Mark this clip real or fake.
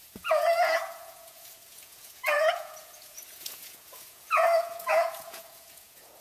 fake